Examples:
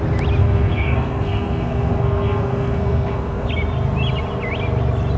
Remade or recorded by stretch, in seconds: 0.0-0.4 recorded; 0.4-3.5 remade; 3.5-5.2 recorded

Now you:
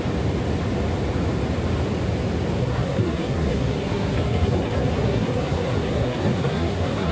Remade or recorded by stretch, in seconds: 0.0-2.6 recorded; 2.6-7.1 remade